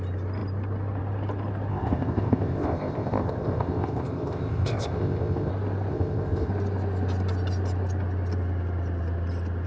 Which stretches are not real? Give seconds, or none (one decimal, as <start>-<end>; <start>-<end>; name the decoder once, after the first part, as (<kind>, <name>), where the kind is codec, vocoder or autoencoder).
1.7-5.5 (codec, ZipCodec); 5.9-6.5